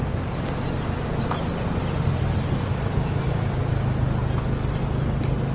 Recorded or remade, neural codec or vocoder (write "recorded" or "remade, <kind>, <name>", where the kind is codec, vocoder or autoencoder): recorded